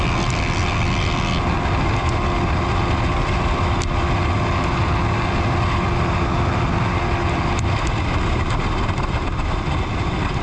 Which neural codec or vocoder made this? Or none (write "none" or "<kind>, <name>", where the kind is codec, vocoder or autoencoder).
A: none